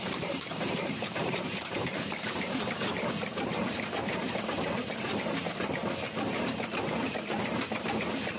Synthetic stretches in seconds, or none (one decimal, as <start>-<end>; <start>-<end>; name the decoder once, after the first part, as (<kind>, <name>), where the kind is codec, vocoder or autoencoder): 0.0-5.8 (vocoder, BigVGAN v2)